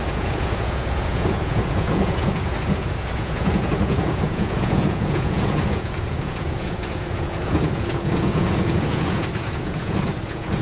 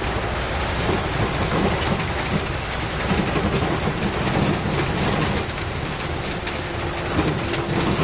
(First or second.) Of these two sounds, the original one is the second